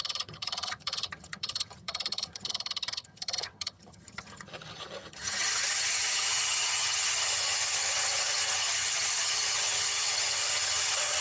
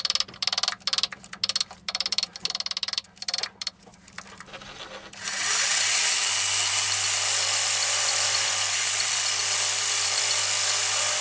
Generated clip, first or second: first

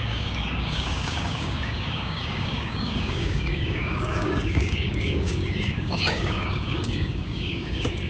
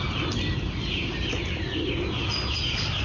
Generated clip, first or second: first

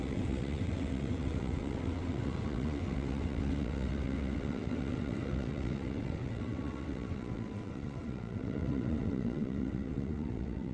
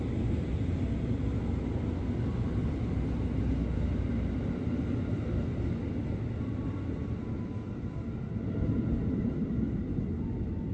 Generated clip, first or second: first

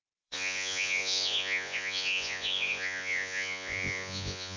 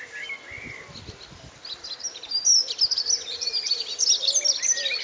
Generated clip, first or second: first